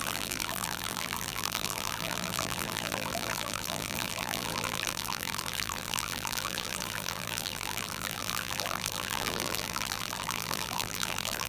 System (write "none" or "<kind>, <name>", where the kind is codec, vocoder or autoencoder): vocoder, BigVGAN v2